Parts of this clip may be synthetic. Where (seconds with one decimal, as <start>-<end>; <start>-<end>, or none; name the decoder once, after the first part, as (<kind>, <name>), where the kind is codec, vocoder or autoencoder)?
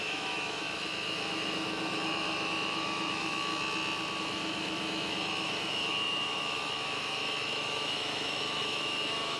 0.0-3.5 (autoencoder, DAC-VAE); 4.2-9.4